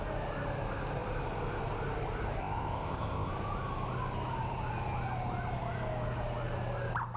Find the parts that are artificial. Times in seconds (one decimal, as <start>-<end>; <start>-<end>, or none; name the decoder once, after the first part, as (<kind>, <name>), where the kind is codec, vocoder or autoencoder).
2.4-3.3 (codec, ZipCodec)